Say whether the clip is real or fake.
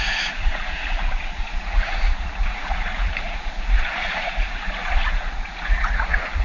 fake